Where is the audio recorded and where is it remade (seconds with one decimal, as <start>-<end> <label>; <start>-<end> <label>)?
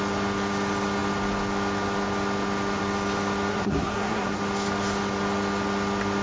0.0-3.5 recorded; 3.5-4.4 remade; 4.4-6.2 recorded